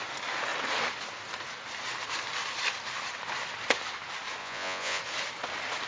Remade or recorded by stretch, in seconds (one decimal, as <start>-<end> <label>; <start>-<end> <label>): 0.0-4.4 recorded; 4.4-5.0 remade; 5.0-5.9 recorded